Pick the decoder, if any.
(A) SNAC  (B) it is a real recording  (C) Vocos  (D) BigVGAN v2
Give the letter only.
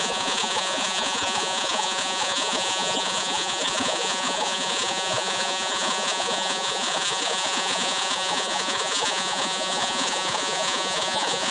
C